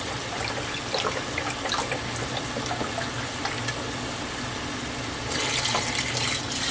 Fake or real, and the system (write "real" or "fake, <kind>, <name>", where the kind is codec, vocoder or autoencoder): real